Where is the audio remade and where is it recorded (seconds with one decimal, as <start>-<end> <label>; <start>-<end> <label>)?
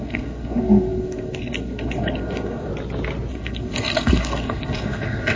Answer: 0.0-2.7 remade; 2.7-3.3 recorded; 3.3-5.4 remade